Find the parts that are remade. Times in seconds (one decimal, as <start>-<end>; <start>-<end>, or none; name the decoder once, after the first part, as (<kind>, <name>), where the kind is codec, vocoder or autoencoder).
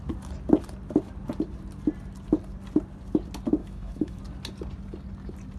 3.6-4.2 (autoencoder, DAC-VAE)